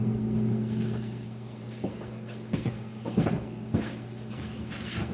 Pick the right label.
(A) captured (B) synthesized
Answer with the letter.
B